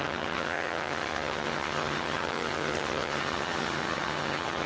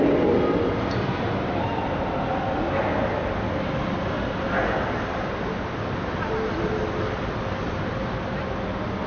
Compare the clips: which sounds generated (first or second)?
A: first